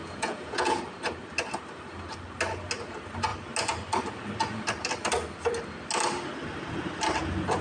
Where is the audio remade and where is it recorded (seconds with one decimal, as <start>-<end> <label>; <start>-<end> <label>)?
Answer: 0.0-0.8 remade; 0.8-7.6 recorded